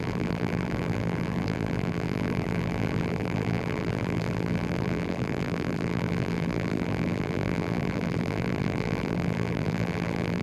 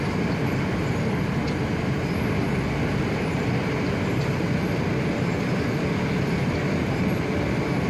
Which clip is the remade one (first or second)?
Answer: first